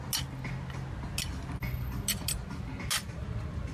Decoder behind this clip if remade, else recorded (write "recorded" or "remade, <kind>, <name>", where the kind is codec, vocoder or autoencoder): recorded